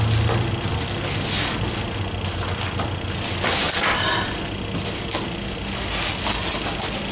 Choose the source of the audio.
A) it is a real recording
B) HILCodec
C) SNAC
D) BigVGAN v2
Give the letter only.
A